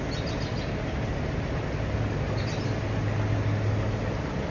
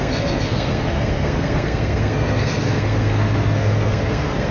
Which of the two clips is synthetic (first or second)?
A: second